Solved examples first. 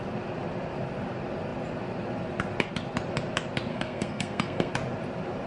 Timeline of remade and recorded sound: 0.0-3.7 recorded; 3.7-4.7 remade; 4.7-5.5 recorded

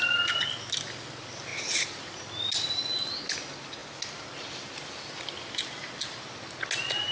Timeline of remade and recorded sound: 0.0-7.1 recorded

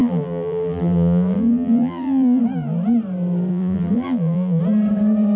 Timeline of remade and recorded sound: 0.0-2.4 remade; 2.4-3.5 recorded; 3.5-4.6 remade; 4.6-5.4 recorded